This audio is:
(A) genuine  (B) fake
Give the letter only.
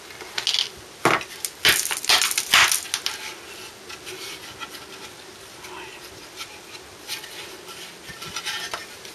A